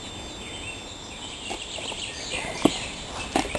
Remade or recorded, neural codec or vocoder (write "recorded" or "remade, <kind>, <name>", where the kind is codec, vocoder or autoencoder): remade, vocoder, BigVGAN v2